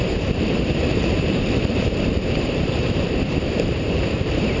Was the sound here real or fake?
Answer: fake